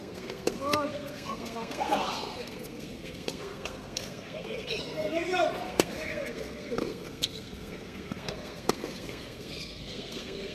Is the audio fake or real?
fake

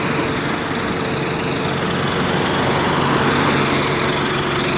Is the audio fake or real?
real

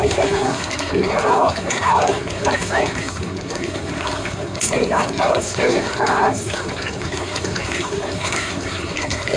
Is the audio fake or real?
fake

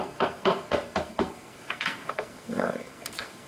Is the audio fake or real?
fake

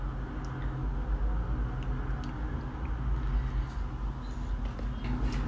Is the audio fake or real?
real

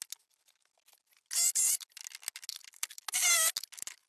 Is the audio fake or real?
real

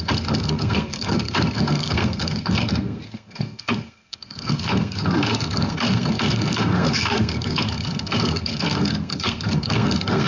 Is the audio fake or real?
fake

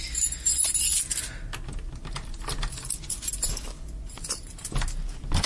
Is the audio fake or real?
real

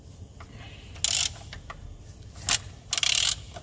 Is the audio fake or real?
real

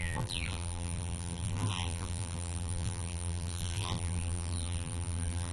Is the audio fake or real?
fake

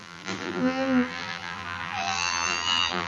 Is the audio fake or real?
fake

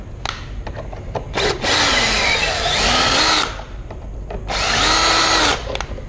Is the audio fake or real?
real